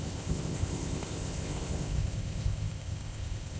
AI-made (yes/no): yes